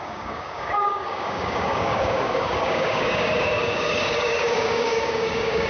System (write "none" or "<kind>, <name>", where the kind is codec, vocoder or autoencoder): codec, DAC